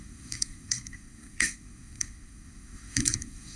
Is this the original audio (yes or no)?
no